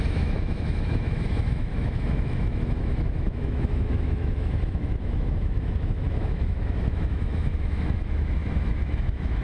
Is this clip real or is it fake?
fake